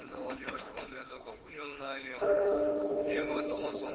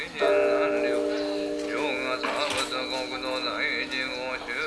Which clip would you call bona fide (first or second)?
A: second